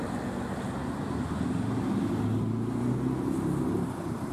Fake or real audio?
real